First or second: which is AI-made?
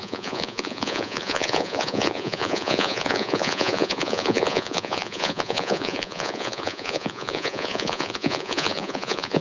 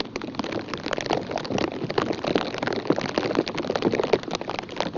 first